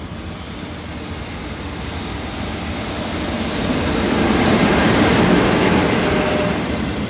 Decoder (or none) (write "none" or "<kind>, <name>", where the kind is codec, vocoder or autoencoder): none